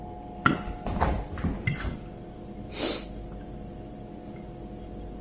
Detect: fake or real real